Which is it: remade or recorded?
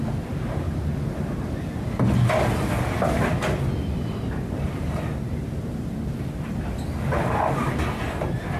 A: recorded